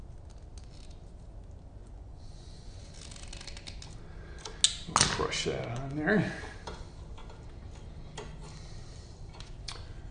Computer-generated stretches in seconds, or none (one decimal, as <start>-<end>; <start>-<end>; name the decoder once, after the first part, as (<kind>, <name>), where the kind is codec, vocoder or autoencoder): 1.8-2.9 (vocoder, Vocos)